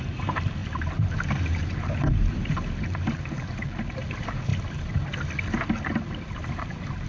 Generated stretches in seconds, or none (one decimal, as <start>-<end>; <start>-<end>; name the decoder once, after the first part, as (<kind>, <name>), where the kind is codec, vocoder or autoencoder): 0.0-4.5 (vocoder, BigVGAN v2); 6.6-7.1

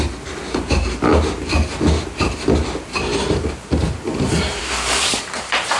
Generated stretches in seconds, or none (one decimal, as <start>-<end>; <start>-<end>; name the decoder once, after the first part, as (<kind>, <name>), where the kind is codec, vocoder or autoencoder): 0.0-1.1 (vocoder, BigVGAN v2); 4.6-5.8

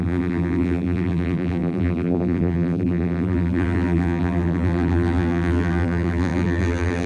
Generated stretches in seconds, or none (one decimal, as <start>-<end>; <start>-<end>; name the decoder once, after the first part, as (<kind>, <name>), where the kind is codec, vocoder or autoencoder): 0.0-7.1 (vocoder, BigVGAN v2)

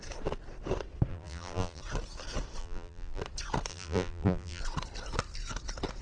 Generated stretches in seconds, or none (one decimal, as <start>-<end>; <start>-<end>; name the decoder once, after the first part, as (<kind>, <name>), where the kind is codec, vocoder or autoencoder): 1.1-1.8 (vocoder, BigVGAN v2); 2.6-3.2; 3.7-4.6